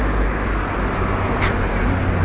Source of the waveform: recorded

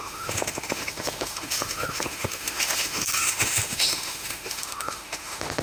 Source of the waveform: remade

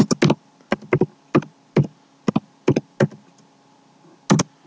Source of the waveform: recorded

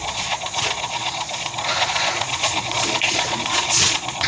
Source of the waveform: remade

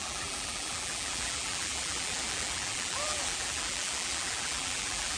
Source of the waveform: remade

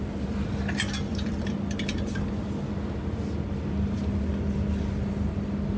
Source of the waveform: recorded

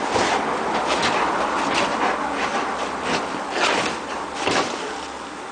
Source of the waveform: recorded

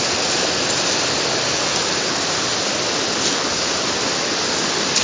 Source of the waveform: recorded